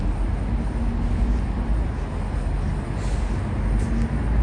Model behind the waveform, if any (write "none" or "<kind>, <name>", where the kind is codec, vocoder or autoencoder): none